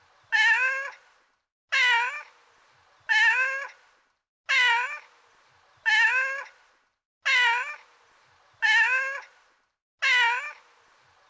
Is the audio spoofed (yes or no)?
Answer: no